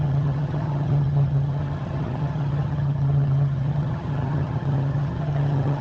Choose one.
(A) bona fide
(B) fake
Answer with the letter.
B